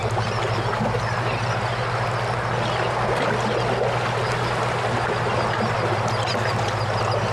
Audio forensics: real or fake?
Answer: real